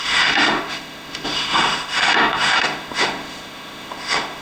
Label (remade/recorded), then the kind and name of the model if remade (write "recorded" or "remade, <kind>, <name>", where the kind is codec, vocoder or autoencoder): remade, autoencoder, DAC-VAE